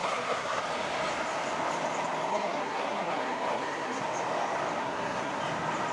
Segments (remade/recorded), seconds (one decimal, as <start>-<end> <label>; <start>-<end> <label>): 0.0-0.6 remade; 0.6-2.3 recorded; 2.3-4.0 remade; 4.0-4.8 recorded; 4.8-5.4 remade; 5.4-5.9 recorded